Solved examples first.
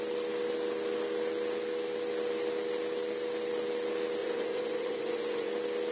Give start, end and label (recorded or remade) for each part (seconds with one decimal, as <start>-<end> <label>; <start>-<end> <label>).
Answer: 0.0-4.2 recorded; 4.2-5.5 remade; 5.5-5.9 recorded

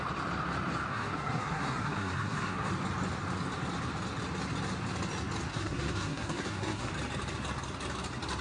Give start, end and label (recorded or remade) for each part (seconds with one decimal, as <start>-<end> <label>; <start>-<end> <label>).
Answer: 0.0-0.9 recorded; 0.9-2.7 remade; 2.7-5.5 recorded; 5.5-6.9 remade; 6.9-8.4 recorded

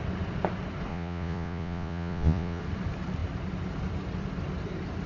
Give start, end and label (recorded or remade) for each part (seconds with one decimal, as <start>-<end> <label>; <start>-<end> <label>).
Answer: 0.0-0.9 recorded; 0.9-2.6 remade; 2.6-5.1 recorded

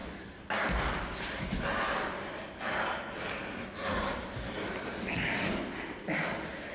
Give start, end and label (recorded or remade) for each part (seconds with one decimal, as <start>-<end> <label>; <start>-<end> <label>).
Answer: 0.0-6.7 recorded

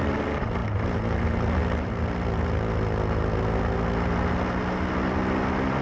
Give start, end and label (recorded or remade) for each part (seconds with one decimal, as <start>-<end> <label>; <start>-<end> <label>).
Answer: 0.0-5.8 recorded